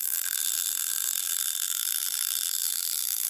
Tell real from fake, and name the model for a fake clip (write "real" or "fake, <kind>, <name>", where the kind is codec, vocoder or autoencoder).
fake, vocoder, BigVGAN v2